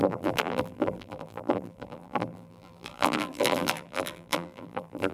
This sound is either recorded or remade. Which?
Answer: remade